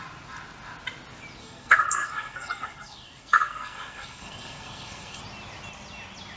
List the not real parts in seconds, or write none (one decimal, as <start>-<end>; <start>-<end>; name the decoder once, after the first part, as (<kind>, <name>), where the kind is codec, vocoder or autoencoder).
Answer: 1.4-5.2 (codec, SNAC)